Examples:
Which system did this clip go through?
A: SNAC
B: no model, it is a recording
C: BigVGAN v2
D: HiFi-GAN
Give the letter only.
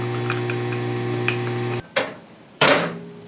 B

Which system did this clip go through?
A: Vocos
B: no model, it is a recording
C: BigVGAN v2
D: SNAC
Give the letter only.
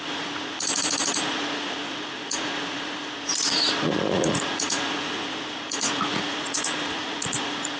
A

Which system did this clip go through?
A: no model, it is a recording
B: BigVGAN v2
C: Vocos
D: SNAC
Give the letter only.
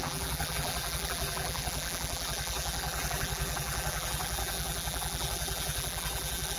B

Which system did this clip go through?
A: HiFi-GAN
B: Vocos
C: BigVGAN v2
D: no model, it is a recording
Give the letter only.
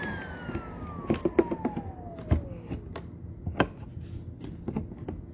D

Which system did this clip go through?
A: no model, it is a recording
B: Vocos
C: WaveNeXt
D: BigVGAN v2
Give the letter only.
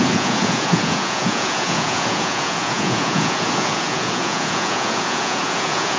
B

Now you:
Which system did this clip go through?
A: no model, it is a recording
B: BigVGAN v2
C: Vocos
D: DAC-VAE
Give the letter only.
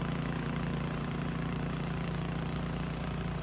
B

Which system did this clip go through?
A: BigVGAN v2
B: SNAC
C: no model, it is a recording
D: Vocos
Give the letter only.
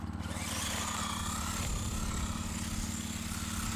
C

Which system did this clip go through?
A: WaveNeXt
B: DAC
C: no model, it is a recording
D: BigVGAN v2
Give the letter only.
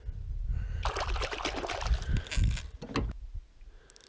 C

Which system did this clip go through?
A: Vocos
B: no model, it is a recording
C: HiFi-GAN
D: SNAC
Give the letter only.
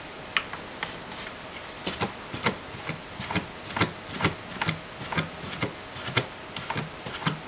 B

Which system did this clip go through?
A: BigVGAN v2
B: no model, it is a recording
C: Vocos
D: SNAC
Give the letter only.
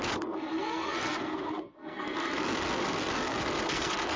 D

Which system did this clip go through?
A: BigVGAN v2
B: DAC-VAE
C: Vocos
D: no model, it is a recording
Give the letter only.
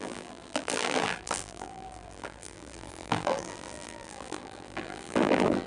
A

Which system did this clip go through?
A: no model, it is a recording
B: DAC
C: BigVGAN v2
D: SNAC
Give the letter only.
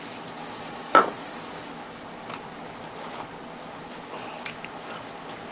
A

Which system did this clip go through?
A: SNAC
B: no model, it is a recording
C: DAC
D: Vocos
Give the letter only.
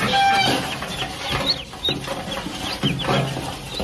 B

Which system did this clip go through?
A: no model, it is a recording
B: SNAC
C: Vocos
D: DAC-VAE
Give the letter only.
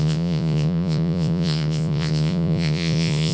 C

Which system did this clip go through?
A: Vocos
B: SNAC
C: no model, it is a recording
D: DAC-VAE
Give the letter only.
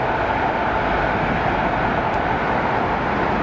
C